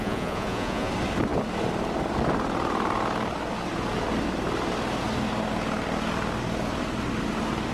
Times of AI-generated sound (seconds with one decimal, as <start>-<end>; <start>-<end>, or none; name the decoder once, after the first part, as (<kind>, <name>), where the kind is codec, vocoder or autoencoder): 0.0-0.9 (vocoder, Vocos)